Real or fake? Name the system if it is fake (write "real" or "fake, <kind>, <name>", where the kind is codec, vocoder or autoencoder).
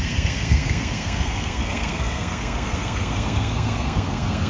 fake, codec, SNAC